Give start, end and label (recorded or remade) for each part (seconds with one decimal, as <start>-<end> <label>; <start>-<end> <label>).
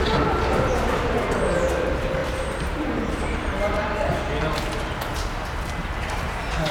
0.0-2.2 recorded; 2.2-3.2 remade; 3.2-5.1 recorded; 5.1-6.7 remade